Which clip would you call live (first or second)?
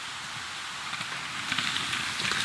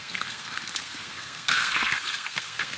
first